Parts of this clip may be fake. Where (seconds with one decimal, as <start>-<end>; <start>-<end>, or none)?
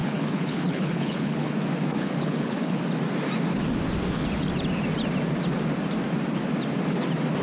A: 0.0-1.5; 1.9-2.8